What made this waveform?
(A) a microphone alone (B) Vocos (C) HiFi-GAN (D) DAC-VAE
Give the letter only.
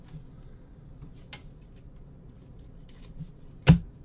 A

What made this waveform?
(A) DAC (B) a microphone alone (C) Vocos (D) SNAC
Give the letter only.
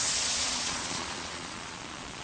C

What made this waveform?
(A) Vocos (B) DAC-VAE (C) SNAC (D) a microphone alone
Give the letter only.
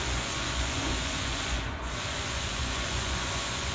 A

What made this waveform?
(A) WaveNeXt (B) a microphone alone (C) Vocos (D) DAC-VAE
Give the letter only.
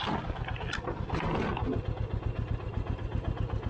B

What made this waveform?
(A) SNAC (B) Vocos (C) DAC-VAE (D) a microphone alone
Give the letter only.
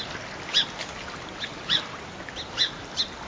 D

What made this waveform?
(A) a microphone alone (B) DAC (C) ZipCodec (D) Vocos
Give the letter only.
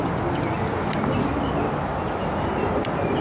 A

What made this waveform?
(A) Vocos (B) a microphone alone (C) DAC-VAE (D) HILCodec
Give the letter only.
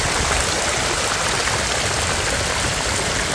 B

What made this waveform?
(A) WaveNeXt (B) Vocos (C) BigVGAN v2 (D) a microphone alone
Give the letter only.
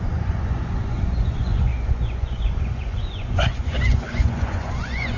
B